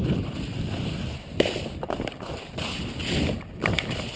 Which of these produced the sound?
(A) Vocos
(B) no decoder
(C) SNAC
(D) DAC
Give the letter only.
B